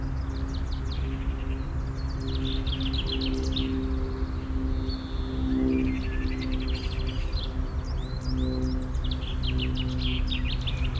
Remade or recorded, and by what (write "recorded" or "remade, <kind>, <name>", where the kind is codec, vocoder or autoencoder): recorded